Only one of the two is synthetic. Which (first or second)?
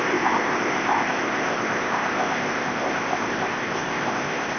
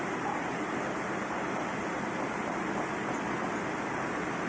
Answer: first